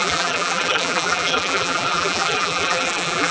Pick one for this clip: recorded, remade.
remade